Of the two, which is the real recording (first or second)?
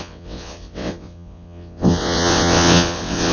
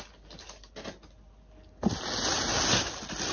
second